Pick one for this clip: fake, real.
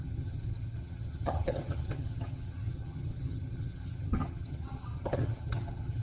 fake